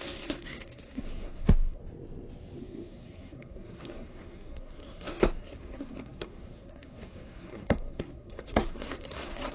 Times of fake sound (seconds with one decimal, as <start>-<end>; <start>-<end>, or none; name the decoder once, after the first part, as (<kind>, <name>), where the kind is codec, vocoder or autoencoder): 0.0-1.8 (codec, SNAC); 2.6-9.5